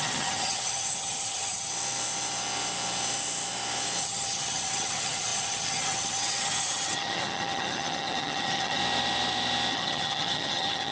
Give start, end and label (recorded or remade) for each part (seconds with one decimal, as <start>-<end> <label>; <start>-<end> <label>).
0.0-1.7 remade; 1.7-4.0 recorded; 4.0-8.8 remade; 8.8-9.7 recorded; 9.7-10.9 remade